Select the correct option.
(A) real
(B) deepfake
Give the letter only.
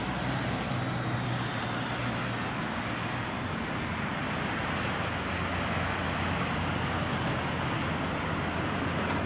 A